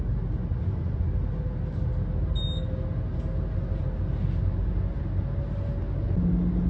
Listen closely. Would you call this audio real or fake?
real